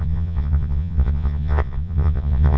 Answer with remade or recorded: remade